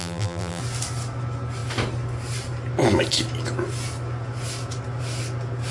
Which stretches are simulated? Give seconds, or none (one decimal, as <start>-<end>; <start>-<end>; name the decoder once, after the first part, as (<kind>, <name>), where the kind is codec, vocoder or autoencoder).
0.0-0.6 (vocoder, BigVGAN v2)